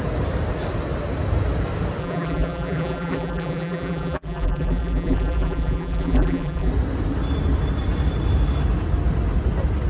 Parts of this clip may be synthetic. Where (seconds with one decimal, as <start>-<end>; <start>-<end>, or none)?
2.0-6.7